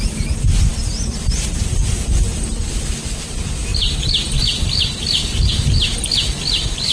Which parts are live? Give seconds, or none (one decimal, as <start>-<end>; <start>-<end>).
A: 0.0-6.9